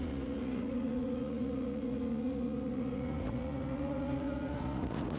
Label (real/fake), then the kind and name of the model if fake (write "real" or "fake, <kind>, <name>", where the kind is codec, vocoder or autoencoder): fake, vocoder, Vocos